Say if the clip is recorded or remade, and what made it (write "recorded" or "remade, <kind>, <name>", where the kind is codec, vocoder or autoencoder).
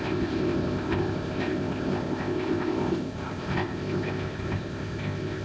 remade, codec, ZipCodec